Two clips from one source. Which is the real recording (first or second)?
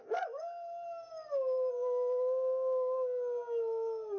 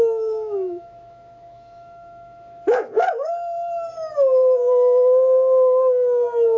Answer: first